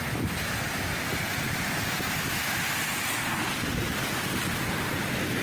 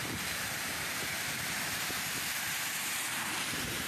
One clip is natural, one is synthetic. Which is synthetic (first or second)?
second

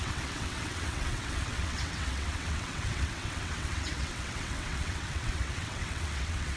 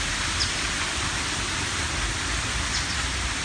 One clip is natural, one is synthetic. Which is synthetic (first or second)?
first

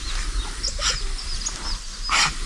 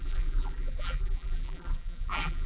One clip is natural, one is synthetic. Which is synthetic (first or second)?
second